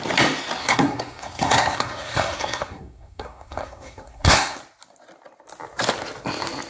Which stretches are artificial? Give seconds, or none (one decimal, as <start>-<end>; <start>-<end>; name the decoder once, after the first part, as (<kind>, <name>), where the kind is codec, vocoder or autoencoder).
0.6-4.6 (codec, SNAC)